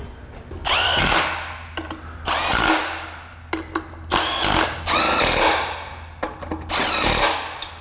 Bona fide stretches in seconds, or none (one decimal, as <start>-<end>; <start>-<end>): 0.0-0.6; 1.1-7.8